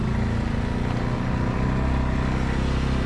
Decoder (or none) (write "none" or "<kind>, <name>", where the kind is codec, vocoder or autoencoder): none